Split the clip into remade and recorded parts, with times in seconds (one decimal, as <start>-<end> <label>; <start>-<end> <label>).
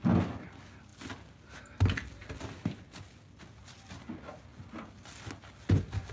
0.0-6.1 recorded